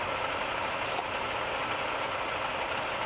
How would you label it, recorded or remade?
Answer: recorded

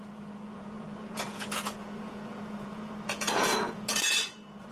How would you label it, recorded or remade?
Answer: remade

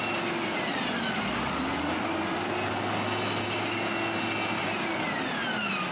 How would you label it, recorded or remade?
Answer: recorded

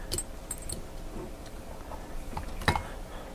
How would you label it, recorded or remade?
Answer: recorded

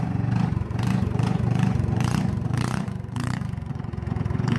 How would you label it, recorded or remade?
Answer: remade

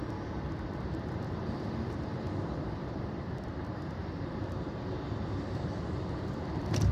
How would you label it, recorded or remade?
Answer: remade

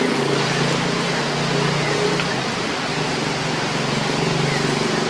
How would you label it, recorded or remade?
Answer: recorded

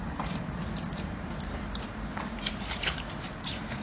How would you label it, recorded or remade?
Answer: remade